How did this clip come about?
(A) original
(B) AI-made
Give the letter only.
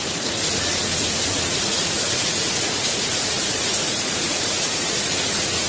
B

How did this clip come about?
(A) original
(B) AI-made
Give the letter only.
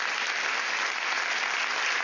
A